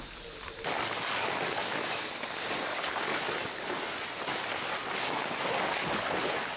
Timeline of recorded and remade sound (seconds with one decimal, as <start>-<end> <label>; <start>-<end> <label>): 0.0-1.6 recorded; 1.6-2.1 remade; 2.1-6.6 recorded